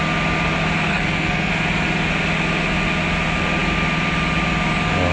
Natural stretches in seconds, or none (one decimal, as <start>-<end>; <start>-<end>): 0.0-0.9; 1.5-5.1